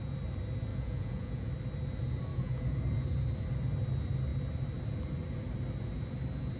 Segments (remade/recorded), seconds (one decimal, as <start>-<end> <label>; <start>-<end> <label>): 0.0-0.7 recorded; 0.7-1.5 remade; 1.5-2.3 recorded; 2.3-2.8 remade; 2.8-6.6 recorded